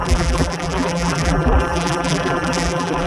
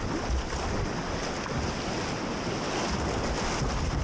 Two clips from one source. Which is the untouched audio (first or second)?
second